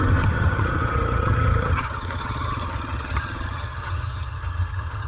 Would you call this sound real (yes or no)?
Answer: no